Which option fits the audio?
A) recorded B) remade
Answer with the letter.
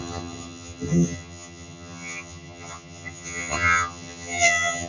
B